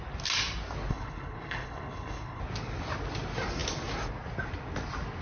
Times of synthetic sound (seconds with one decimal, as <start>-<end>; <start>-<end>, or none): 0.9-2.4